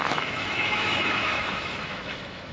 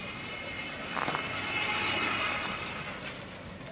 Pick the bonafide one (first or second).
second